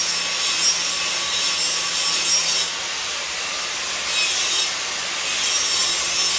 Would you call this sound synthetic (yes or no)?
no